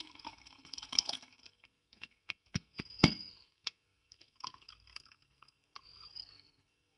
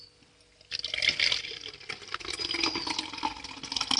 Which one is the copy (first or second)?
first